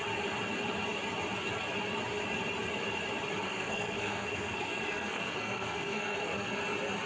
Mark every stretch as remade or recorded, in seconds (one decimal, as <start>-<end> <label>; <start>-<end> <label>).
0.0-3.4 recorded; 3.4-6.6 remade; 6.6-7.1 recorded